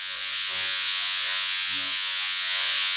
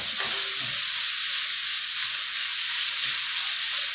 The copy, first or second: first